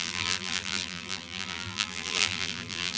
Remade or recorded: remade